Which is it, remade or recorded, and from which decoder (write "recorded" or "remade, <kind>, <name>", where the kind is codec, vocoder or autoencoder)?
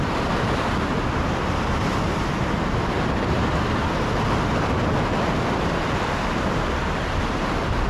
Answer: remade, vocoder, BigVGAN v2